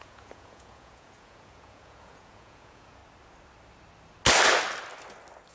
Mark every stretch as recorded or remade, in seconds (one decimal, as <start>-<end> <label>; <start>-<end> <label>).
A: 0.0-3.0 remade; 3.0-5.5 recorded